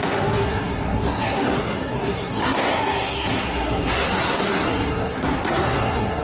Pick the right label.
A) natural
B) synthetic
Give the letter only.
B